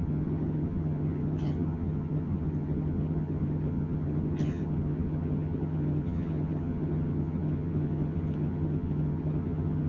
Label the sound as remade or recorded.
remade